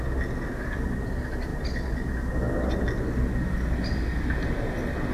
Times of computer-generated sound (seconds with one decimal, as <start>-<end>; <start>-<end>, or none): none